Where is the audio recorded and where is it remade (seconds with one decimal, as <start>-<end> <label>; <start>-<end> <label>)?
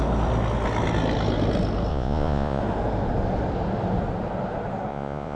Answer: 0.0-1.9 recorded; 1.9-2.6 remade; 2.6-4.9 recorded; 4.9-5.4 remade